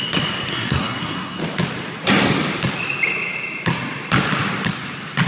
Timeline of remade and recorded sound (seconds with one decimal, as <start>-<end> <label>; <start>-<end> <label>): 0.0-0.5 recorded; 0.5-1.4 remade; 1.4-5.3 recorded